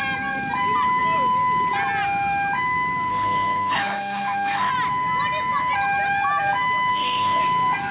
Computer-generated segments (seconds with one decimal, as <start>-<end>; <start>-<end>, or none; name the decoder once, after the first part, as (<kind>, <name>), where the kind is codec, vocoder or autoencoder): 3.1-4.7 (autoencoder, DAC-VAE); 6.9-7.4